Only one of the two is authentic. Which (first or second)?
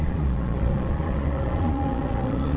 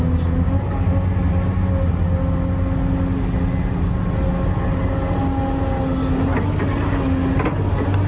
second